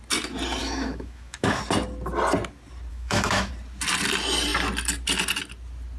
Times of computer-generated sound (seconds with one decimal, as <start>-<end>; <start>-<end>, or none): 0.6-1.6; 2.9-3.5